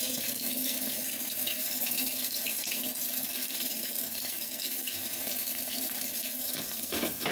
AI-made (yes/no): yes